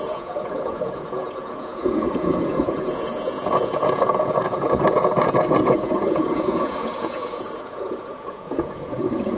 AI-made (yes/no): yes